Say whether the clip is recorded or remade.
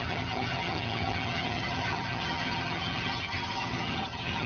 remade